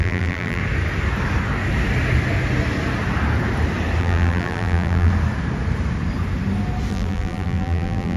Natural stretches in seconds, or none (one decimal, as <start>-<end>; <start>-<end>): 0.6-4.0; 5.1-6.9